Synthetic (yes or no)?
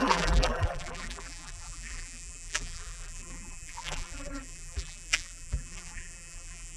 yes